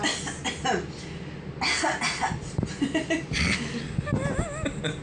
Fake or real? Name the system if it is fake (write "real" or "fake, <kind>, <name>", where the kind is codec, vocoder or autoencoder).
real